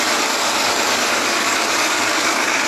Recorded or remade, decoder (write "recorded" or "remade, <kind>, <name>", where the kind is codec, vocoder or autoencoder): remade, codec, DAC